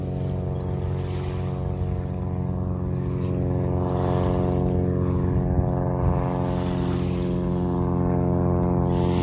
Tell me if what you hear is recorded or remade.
recorded